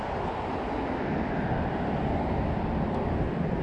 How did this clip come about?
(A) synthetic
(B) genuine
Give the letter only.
B